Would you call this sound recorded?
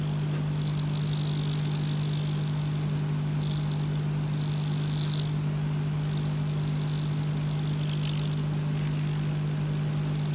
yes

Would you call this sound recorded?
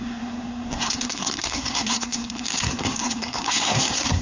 no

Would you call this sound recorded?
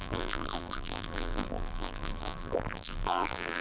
no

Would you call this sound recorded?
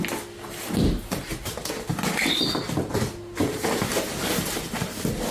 yes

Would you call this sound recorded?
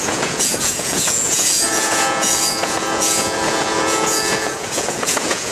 no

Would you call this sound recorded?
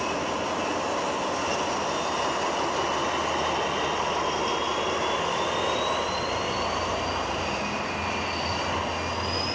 yes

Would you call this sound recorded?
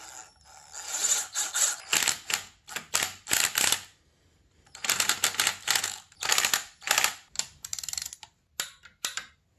yes